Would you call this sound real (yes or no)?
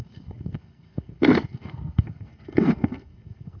no